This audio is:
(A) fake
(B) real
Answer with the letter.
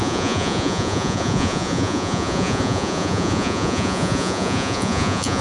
A